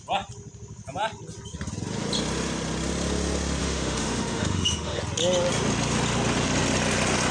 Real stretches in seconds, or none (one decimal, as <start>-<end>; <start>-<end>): 0.0-3.6; 5.0-7.3